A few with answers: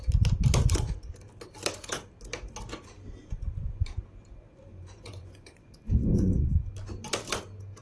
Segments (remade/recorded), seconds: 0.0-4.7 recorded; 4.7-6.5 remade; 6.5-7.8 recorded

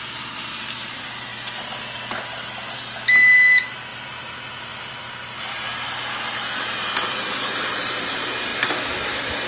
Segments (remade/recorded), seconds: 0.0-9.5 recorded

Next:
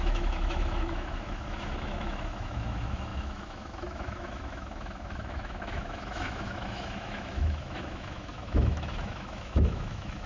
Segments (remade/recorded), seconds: 0.0-10.3 remade

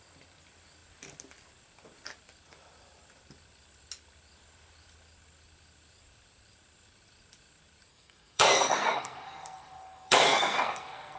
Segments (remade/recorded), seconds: 0.0-7.9 recorded; 7.9-11.2 remade

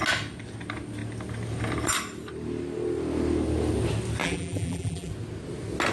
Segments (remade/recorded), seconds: 0.0-4.2 recorded; 4.2-5.1 remade; 5.1-5.9 recorded

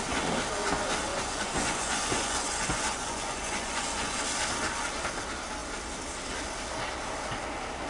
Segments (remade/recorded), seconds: 0.0-1.1 recorded; 1.1-4.2 remade; 4.2-7.9 recorded